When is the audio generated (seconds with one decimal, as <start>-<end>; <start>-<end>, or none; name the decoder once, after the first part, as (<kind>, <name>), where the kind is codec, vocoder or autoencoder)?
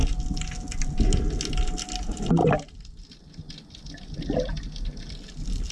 none